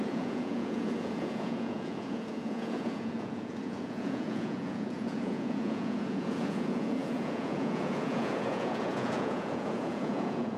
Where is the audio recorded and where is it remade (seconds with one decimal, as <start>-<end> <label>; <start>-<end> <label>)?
0.0-10.6 remade